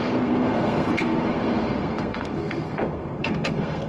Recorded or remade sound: remade